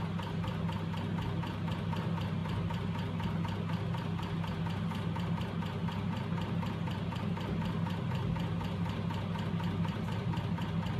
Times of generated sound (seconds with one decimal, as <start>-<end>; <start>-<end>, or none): none